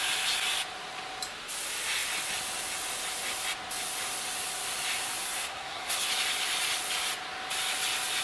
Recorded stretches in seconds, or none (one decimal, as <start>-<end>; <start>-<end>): 0.0-5.2; 6.1-8.2